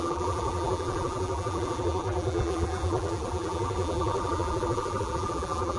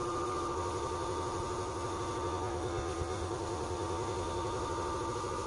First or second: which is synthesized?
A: first